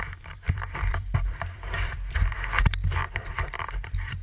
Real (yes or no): no